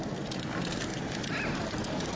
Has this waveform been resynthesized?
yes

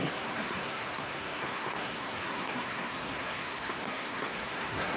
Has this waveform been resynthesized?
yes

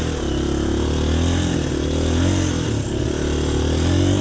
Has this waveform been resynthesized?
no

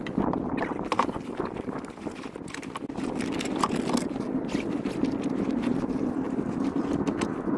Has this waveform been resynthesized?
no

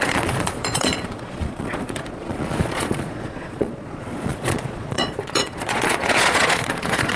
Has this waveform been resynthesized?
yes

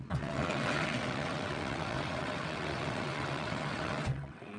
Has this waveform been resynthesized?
yes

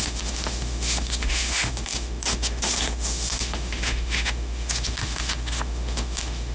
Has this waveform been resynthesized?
yes